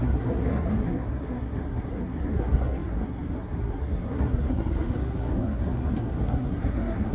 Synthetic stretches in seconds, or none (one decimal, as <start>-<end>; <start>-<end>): 0.0-7.1